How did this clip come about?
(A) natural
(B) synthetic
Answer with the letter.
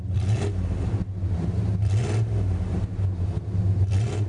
A